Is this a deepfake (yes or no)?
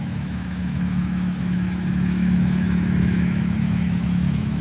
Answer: yes